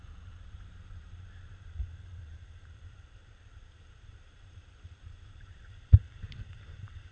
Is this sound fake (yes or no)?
yes